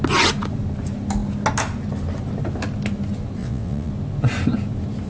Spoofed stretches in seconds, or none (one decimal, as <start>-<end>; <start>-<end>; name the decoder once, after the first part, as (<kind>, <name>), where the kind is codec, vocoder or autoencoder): 3.4-3.9 (vocoder, WaveNeXt)